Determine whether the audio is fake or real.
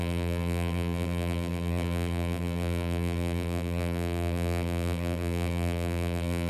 fake